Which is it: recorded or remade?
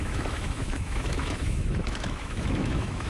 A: remade